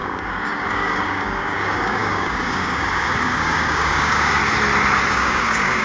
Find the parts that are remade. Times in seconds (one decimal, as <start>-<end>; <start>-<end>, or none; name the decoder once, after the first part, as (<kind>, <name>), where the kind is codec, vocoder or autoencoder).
0.0-4.4 (codec, DAC); 5.1-5.8